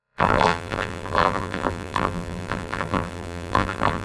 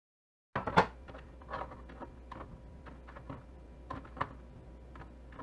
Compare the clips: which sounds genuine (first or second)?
second